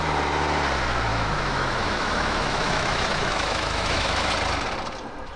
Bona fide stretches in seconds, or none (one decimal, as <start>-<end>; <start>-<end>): 0.0-1.1; 4.3-5.4